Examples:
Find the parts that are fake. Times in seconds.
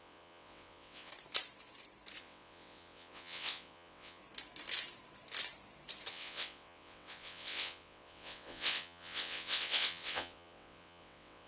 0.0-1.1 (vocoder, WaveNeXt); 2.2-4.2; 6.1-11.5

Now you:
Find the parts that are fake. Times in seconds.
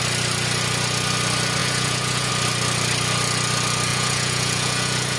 1.6-2.3 (vocoder, Vocos); 3.9-5.2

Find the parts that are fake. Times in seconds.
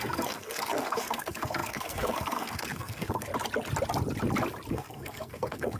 0.0-3.3 (codec, SNAC); 4.7-5.8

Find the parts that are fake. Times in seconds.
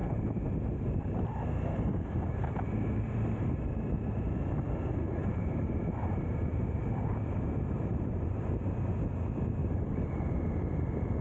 0.0-4.3 (vocoder, BigVGAN v2); 5.2-8.8; 9.6-10.3